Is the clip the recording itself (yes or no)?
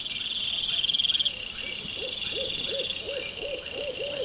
yes